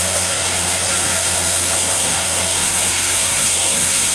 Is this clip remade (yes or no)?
yes